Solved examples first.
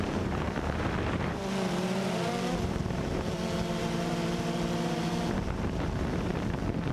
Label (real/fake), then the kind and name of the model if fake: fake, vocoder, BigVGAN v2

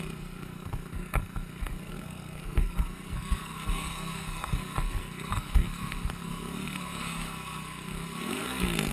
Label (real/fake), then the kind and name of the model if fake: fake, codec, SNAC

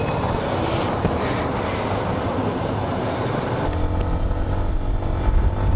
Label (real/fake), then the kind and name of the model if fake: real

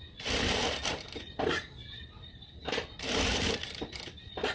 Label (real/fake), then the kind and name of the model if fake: real